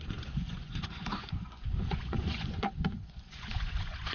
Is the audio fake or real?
fake